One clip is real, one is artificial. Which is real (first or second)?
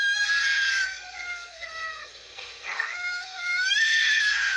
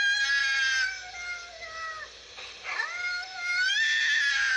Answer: second